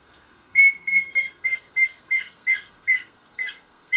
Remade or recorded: remade